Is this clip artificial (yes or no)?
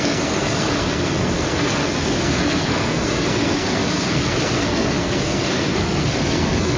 yes